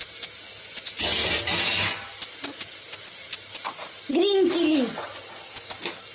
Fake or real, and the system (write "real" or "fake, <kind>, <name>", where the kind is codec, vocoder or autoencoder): real